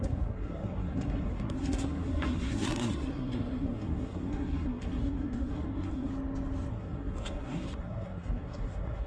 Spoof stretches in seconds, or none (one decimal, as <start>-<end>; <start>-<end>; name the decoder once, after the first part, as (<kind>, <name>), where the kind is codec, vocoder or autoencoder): 0.0-6.1 (codec, SNAC); 6.7-9.1